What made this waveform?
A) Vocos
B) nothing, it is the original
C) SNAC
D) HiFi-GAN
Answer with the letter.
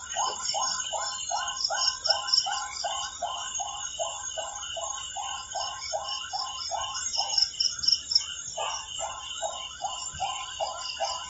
B